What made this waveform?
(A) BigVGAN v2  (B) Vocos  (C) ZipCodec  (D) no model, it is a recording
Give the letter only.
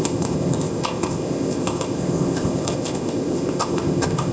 C